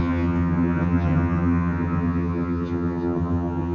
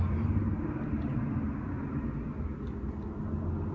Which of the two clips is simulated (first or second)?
first